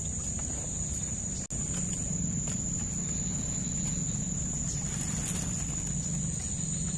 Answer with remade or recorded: recorded